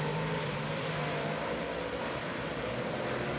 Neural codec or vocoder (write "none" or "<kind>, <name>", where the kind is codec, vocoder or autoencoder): none